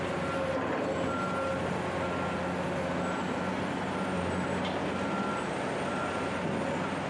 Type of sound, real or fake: real